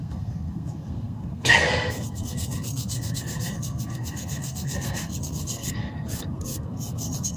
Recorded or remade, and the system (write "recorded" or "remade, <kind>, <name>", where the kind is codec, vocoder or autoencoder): remade, codec, SNAC